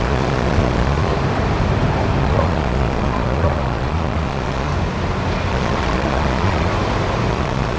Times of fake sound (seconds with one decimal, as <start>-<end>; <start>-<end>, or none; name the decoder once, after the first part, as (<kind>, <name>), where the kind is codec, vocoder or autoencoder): 0.0-1.1 (vocoder, Vocos); 2.2-4.7; 5.5-6.7; 7.3-7.8